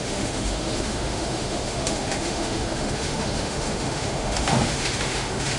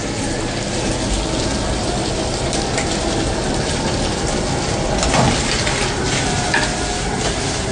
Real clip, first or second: second